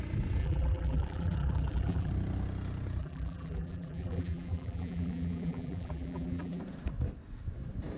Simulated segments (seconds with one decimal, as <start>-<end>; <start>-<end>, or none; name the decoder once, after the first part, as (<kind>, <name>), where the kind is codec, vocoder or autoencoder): 0.4-2.1 (vocoder, BigVGAN v2); 3.0-6.6